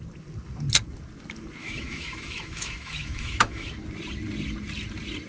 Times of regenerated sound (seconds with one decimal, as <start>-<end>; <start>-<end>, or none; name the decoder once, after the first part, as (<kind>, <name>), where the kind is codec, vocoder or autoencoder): 1.6-3.7 (autoencoder, DAC-VAE)